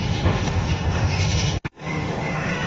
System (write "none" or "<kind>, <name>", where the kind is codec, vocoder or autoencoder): autoencoder, DAC-VAE